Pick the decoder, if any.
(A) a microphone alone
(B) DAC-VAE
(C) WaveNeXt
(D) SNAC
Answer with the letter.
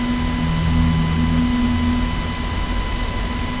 A